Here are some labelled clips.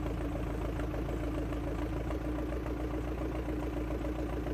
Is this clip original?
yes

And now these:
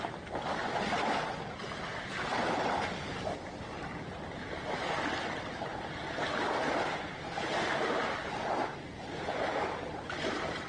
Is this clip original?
yes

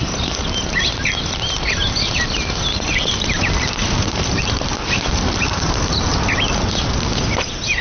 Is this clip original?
no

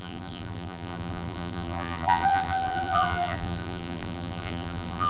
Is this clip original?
no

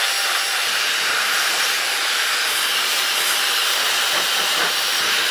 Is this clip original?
no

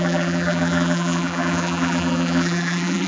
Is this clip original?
no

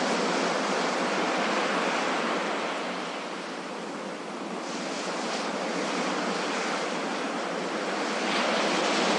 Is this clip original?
yes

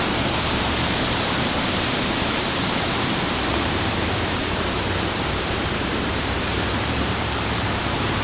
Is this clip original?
no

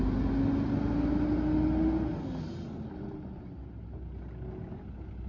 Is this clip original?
yes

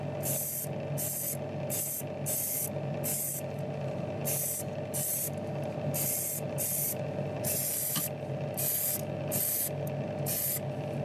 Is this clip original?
yes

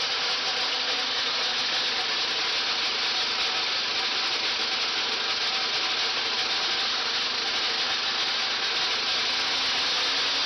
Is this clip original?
yes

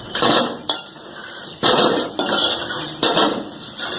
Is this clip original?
no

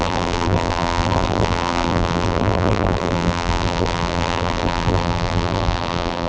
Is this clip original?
no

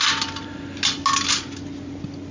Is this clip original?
yes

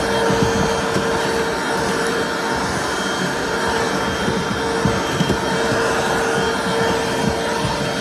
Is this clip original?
yes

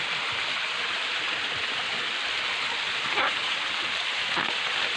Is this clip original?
yes